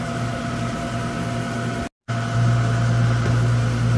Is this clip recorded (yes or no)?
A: yes